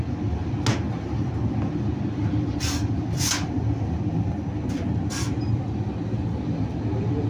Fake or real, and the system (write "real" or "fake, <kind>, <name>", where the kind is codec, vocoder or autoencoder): real